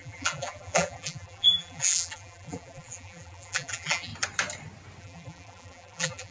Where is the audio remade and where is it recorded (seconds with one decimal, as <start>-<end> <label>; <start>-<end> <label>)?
0.0-4.1 remade; 4.1-5.0 recorded; 5.0-6.3 remade